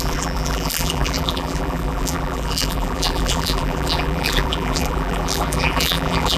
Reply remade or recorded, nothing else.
remade